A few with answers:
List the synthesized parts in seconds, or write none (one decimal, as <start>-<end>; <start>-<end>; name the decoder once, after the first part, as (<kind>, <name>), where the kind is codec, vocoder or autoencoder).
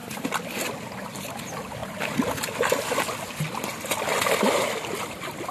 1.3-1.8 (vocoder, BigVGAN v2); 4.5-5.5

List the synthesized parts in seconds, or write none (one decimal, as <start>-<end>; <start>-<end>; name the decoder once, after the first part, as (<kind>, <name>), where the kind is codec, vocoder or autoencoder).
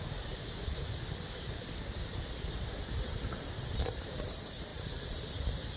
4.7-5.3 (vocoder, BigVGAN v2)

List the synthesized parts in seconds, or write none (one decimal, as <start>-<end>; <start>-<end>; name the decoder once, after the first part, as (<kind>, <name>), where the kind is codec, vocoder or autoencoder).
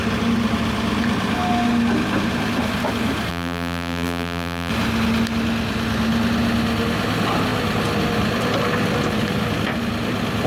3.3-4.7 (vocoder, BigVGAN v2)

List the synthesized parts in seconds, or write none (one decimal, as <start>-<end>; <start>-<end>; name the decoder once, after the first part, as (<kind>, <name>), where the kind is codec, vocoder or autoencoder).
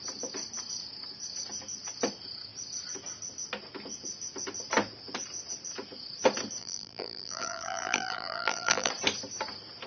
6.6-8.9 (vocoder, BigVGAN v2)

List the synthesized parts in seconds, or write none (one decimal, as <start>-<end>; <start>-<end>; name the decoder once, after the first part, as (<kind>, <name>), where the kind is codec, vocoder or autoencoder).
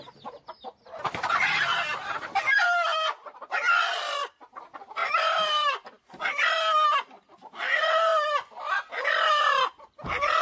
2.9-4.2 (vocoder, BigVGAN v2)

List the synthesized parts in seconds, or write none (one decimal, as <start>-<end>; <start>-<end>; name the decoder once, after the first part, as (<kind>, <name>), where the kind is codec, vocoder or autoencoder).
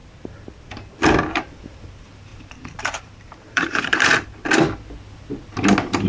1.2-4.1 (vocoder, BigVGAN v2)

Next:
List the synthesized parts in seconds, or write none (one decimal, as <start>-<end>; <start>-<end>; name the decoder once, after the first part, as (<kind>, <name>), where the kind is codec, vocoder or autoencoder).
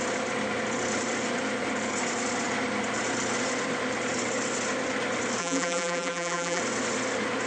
5.4-6.6 (vocoder, BigVGAN v2)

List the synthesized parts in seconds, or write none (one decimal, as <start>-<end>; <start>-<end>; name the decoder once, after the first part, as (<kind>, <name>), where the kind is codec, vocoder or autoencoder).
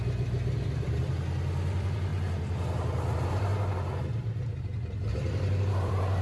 0.0-2.1 (vocoder, BigVGAN v2); 3.1-3.5; 5.1-6.2